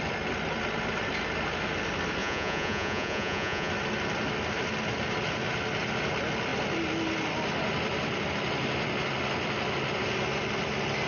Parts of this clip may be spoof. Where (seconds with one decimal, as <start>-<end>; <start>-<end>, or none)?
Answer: 2.2-3.7